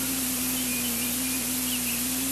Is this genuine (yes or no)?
yes